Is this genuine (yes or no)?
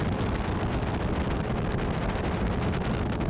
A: yes